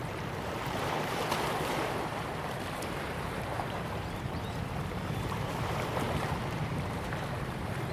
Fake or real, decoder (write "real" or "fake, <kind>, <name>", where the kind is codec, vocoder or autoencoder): fake, vocoder, BigVGAN v2